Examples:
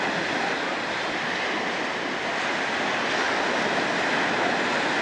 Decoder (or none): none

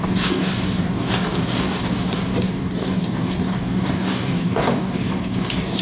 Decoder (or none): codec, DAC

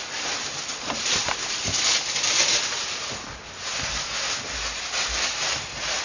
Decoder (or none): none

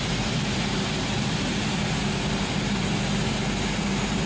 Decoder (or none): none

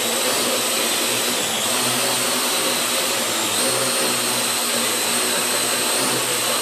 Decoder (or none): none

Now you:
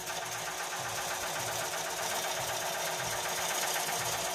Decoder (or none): none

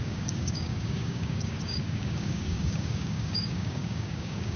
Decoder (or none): codec, DAC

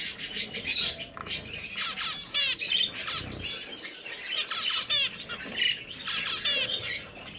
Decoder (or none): none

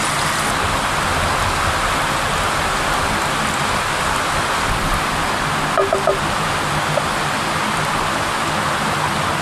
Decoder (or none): none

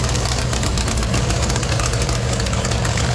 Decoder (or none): codec, DAC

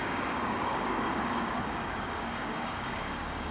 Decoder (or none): codec, DAC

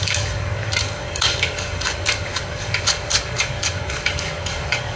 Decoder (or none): codec, DAC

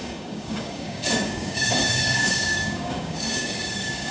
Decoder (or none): codec, DAC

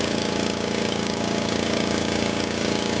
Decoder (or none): codec, DAC